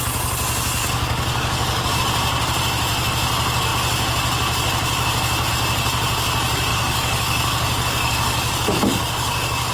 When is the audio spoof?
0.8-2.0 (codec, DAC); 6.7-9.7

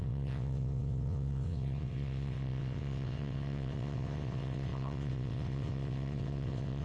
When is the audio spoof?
0.0-6.8 (vocoder, WaveNeXt)